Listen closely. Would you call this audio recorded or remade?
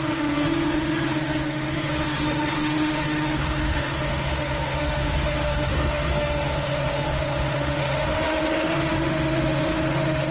remade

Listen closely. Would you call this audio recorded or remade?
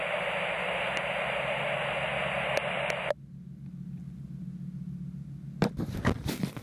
recorded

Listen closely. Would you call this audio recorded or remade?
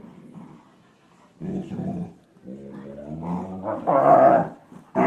recorded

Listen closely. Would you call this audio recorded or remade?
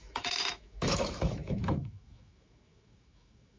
remade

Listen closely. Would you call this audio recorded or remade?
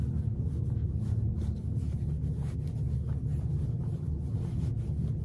recorded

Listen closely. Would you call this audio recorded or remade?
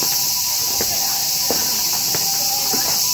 recorded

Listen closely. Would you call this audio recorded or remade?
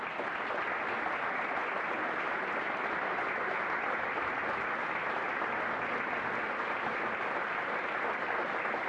recorded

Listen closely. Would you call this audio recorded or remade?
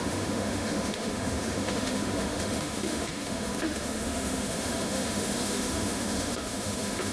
remade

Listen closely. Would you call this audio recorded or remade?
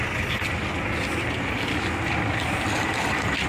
recorded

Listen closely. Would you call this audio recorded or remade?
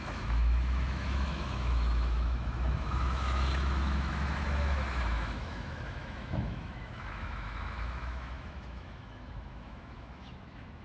remade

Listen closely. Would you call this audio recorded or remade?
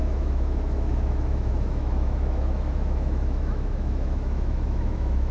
remade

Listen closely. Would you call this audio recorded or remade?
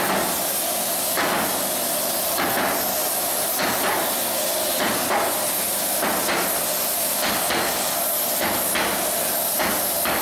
recorded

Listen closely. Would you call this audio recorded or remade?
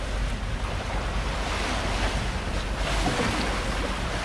recorded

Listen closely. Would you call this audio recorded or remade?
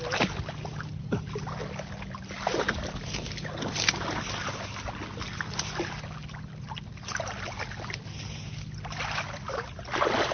recorded